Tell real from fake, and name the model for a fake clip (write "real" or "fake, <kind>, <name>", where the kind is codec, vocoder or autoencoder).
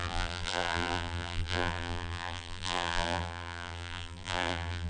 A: fake, vocoder, BigVGAN v2